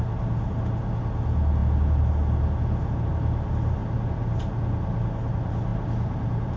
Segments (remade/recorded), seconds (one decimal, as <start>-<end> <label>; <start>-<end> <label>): 0.0-6.6 recorded